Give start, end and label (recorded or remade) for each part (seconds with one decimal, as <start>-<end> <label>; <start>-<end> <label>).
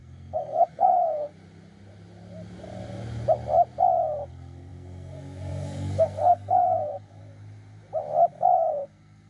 0.0-1.3 remade; 1.3-4.3 recorded; 4.3-7.2 remade; 7.2-8.7 recorded; 8.7-9.3 remade